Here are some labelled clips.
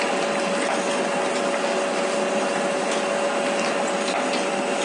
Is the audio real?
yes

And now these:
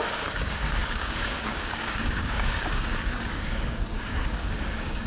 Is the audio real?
no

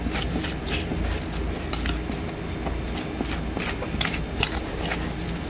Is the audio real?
yes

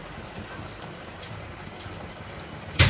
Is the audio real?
no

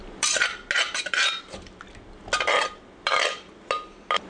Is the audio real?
yes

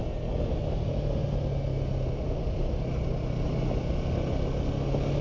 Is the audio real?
yes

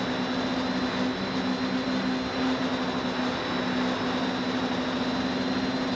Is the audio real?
yes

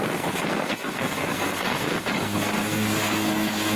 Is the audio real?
no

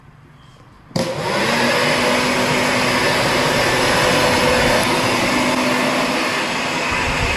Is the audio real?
yes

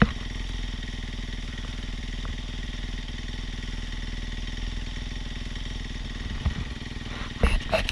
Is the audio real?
yes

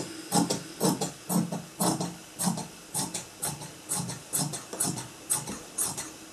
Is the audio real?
yes